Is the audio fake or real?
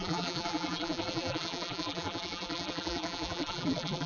fake